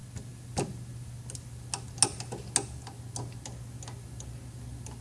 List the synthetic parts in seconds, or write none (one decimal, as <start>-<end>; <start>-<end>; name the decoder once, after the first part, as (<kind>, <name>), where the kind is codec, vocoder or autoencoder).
none